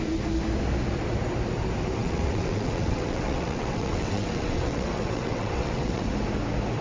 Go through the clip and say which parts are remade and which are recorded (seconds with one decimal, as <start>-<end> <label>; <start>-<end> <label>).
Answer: 0.0-2.0 recorded; 2.0-6.1 remade; 6.1-6.8 recorded